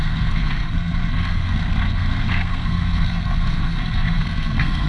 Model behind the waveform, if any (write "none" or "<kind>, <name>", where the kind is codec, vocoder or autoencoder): codec, SNAC